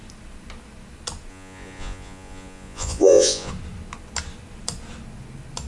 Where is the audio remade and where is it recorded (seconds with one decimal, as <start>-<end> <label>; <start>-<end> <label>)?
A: 0.0-1.3 recorded; 1.3-3.5 remade; 3.5-5.7 recorded